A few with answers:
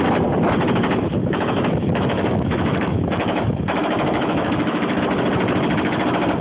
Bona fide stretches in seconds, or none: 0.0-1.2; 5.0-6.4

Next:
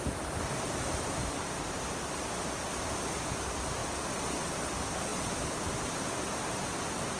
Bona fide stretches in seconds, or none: 3.8-4.5

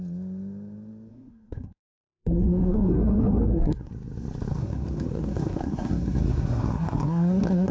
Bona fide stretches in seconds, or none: 0.0-1.1; 3.9-4.5

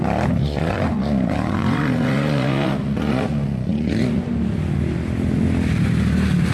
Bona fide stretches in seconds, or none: 0.0-0.4; 4.3-6.5

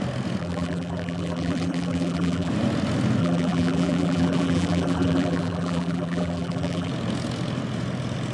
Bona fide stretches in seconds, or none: 0.0-0.4; 2.5-3.2; 6.9-8.3

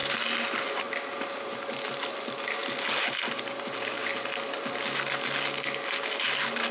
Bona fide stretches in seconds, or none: 0.0-6.7